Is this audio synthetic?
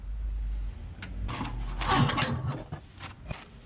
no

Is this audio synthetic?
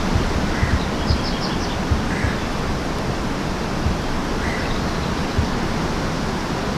no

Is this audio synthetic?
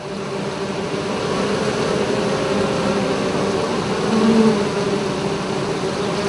no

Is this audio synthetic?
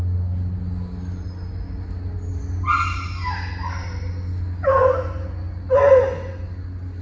no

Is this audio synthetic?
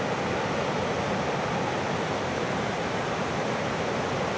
no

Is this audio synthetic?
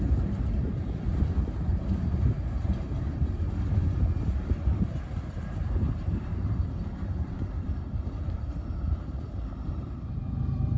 yes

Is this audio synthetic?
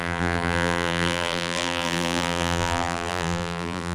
yes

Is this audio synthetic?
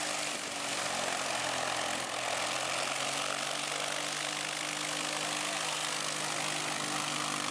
no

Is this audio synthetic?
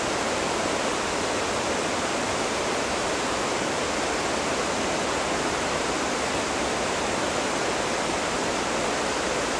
no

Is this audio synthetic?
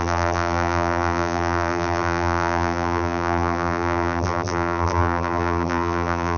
yes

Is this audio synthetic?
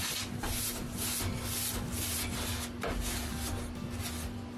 no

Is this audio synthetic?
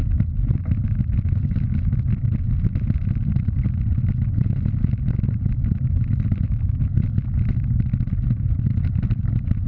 no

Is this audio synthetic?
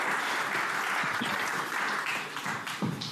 no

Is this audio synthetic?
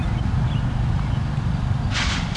no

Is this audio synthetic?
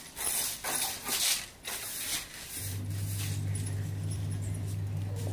no